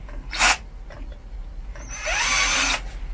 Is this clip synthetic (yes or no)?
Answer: no